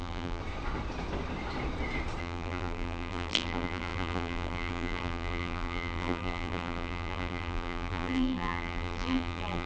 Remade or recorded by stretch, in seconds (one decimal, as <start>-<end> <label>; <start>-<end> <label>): 0.0-0.4 remade; 0.4-2.2 recorded; 2.2-9.7 remade